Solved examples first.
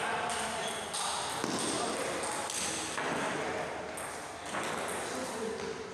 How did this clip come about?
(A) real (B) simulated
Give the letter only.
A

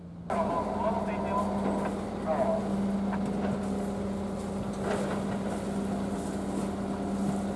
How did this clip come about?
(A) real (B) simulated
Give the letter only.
A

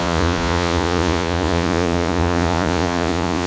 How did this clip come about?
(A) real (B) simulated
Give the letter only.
B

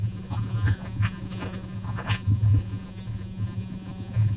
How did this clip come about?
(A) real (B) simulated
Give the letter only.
B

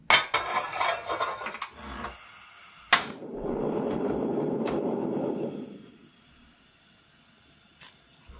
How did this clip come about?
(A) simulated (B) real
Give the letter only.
B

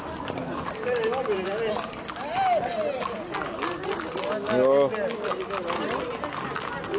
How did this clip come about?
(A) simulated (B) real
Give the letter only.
B